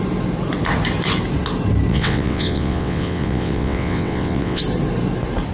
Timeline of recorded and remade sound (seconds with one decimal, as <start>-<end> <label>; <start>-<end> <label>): 0.0-1.9 recorded; 1.9-4.6 remade; 4.6-5.5 recorded